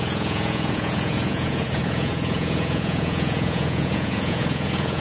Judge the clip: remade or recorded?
remade